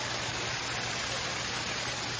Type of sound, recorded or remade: recorded